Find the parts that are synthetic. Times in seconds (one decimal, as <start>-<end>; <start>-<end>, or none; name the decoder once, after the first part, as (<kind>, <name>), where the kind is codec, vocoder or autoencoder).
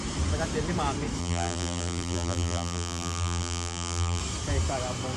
1.2-4.2 (vocoder, BigVGAN v2)